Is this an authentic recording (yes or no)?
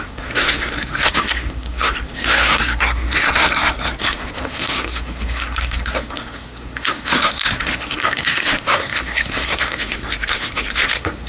no